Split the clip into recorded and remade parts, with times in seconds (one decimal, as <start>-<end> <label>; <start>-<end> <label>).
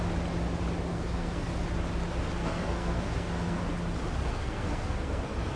0.0-0.9 recorded; 0.9-1.5 remade; 1.5-2.4 recorded; 2.4-3.6 remade; 3.6-4.2 recorded; 4.2-5.6 remade